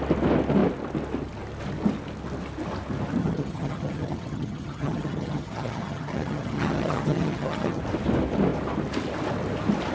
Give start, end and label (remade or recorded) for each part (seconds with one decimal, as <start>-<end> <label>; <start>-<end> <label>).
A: 0.0-3.2 recorded; 3.2-7.8 remade; 7.8-9.9 recorded